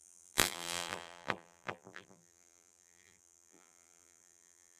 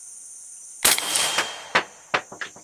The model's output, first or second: first